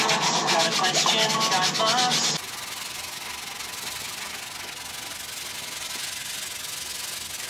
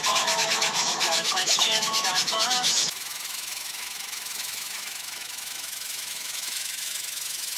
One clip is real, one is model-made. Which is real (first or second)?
first